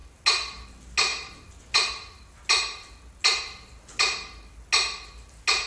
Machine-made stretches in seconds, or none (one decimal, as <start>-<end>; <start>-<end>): none